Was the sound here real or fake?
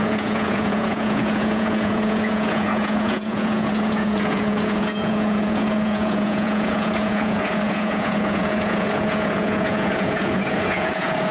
fake